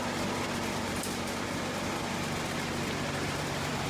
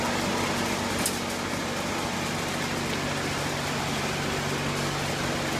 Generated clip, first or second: first